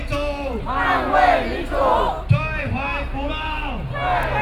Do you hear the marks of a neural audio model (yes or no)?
no